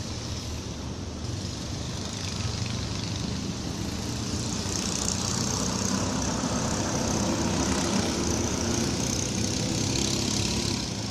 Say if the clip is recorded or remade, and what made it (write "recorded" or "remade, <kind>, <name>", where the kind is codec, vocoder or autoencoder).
recorded